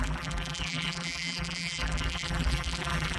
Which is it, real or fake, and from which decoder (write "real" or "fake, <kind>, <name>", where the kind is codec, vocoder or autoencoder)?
fake, vocoder, BigVGAN v2